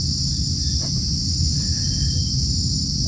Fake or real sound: real